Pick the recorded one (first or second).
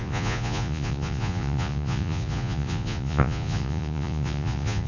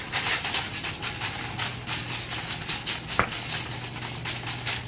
second